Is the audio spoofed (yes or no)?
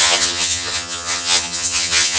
yes